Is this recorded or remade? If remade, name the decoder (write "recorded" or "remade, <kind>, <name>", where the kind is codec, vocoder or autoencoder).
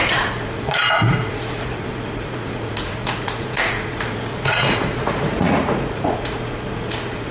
remade, vocoder, Vocos